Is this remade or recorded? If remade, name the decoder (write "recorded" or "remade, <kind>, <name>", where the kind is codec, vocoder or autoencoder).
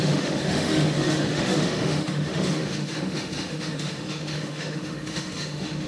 remade, autoencoder, DAC-VAE